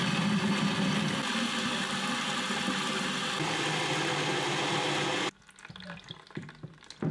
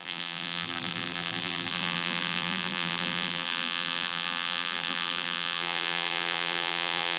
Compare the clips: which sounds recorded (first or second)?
first